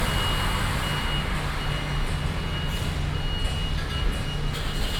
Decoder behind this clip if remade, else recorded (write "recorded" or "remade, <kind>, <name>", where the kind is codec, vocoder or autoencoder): recorded